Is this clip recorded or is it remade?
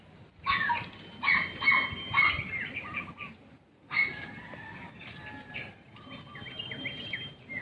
recorded